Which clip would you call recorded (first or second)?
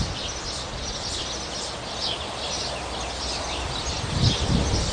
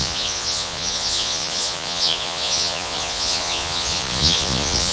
first